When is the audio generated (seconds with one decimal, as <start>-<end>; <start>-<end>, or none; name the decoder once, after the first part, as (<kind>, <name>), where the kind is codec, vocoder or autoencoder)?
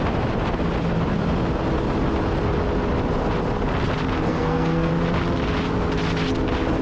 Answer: 4.3-4.9 (codec, SNAC)